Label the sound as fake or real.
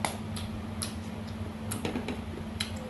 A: real